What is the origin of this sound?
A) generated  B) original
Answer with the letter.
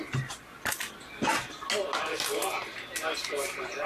B